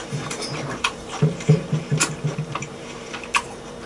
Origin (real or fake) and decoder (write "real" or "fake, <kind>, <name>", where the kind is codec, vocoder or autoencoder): fake, vocoder, BigVGAN v2